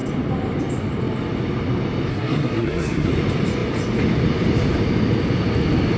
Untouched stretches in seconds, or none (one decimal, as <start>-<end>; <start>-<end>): 0.0-2.1; 3.1-6.0